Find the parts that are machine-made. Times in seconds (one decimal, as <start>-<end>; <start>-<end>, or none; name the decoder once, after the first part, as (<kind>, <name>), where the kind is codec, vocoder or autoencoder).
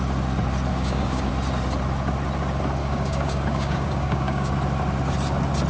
0.7-1.3 (codec, DAC); 2.8-4.5